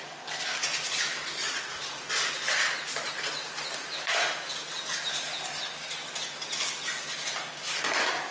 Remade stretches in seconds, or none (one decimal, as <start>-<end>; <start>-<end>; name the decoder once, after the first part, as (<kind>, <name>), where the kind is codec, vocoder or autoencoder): 1.4-2.1 (vocoder, Vocos)

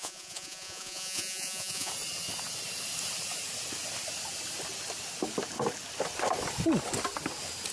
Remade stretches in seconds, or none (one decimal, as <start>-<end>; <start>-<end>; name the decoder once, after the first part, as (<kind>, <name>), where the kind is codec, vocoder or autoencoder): 0.0-1.9 (vocoder, Vocos)

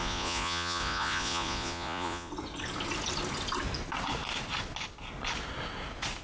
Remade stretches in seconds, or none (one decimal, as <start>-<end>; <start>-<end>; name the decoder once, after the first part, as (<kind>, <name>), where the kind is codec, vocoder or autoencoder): 0.0-2.3 (vocoder, Vocos)